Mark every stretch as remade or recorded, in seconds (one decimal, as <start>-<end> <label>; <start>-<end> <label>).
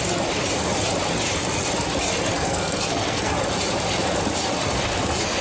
0.0-2.3 recorded; 2.3-3.3 remade; 3.3-5.4 recorded